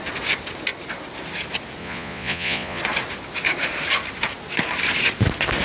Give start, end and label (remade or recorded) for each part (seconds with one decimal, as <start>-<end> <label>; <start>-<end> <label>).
0.0-1.8 recorded; 1.8-2.8 remade; 2.8-5.6 recorded